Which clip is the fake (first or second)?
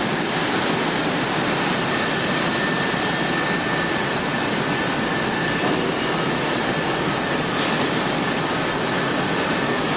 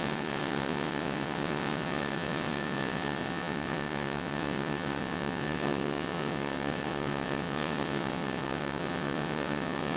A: second